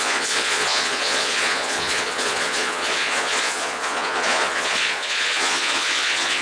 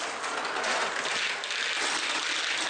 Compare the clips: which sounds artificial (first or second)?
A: first